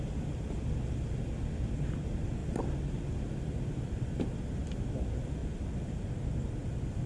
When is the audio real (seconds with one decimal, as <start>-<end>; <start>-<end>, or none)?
0.0-7.1